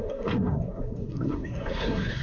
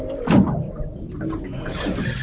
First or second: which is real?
second